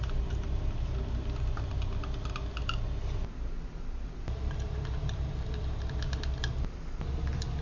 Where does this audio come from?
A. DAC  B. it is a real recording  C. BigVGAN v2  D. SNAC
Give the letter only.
B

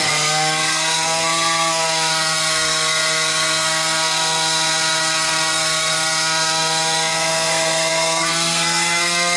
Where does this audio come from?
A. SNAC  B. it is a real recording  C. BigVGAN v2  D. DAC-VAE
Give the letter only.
A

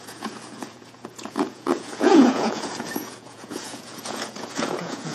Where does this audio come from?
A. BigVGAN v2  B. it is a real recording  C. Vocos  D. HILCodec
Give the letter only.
C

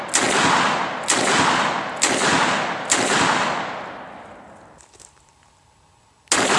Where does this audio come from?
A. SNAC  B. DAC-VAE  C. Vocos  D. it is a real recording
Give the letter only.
D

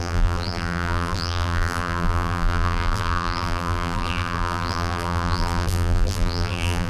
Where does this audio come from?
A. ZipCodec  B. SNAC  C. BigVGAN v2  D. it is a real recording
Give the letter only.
C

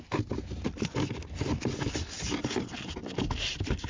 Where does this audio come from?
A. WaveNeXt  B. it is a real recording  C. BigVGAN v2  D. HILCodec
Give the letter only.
B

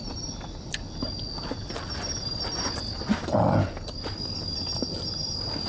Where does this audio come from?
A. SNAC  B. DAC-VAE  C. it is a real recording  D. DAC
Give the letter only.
C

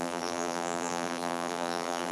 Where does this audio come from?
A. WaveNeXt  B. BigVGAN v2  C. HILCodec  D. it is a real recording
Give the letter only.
B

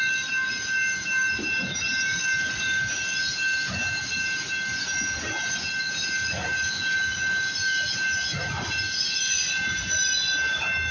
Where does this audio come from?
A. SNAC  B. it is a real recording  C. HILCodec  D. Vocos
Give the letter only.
B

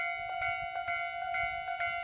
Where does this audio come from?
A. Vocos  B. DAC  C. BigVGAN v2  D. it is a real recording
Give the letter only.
D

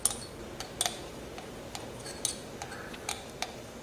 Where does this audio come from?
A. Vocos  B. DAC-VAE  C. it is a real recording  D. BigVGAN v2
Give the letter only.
C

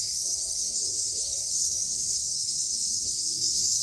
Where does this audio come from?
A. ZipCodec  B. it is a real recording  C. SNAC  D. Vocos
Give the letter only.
C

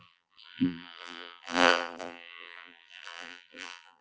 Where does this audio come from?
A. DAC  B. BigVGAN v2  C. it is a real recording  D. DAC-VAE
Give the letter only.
B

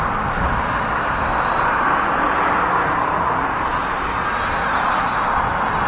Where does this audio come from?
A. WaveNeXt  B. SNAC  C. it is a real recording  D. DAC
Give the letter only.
C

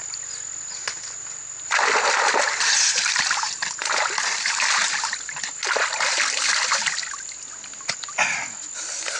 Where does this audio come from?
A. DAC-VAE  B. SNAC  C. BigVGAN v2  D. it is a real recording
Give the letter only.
D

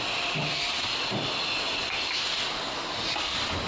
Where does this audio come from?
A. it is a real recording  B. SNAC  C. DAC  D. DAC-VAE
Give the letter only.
A